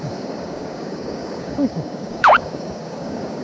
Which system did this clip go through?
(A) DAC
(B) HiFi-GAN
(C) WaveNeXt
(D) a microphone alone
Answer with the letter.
A